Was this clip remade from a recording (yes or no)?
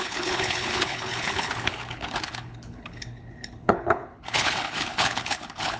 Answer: yes